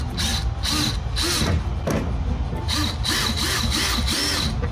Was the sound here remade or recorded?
recorded